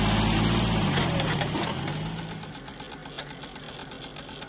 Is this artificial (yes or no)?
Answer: no